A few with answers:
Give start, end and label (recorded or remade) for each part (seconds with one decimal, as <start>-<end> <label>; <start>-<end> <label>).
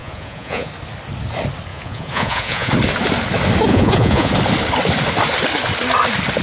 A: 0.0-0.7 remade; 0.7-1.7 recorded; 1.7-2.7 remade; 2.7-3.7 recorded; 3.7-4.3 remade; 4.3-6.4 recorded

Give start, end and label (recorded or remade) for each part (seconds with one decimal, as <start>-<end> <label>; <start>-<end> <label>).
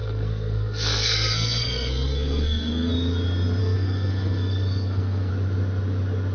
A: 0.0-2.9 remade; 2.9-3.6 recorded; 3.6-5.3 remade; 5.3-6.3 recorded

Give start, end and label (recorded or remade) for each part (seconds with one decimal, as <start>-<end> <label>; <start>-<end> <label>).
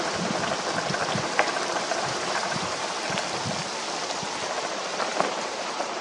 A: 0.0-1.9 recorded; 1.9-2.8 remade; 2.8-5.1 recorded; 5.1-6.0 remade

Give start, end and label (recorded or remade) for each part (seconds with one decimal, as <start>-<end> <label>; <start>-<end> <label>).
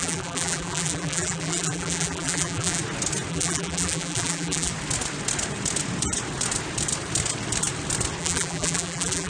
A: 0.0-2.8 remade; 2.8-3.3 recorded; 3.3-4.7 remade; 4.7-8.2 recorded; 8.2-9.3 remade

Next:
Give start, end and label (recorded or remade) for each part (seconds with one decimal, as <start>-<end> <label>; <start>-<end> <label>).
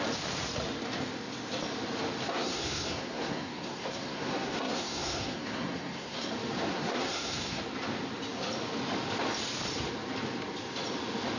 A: 0.0-2.3 recorded; 2.3-6.3 remade; 6.3-6.7 recorded; 6.7-7.6 remade; 7.6-11.4 recorded